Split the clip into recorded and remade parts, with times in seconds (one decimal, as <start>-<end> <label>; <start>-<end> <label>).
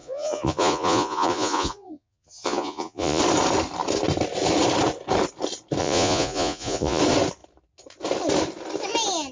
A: 0.0-3.2 remade; 3.2-5.8 recorded; 5.8-7.0 remade; 7.0-9.3 recorded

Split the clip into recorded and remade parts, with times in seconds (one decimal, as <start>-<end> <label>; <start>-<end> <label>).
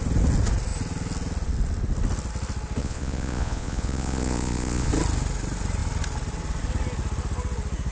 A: 0.0-2.8 recorded; 2.8-4.9 remade; 4.9-7.9 recorded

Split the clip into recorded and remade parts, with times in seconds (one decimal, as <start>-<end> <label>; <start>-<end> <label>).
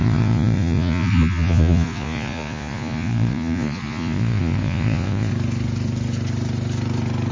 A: 0.0-5.3 remade; 5.3-7.3 recorded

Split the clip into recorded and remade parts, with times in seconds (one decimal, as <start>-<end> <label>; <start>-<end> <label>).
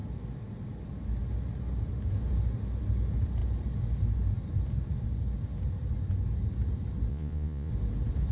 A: 0.0-7.1 recorded; 7.1-7.7 remade; 7.7-8.3 recorded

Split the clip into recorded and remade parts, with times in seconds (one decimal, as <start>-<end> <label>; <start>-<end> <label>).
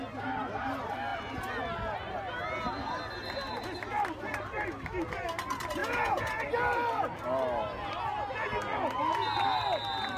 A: 0.0-5.8 recorded; 5.8-6.4 remade; 6.4-10.2 recorded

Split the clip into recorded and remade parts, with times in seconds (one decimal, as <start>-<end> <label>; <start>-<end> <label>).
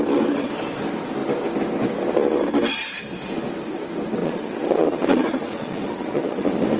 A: 0.0-4.2 recorded; 4.2-6.8 remade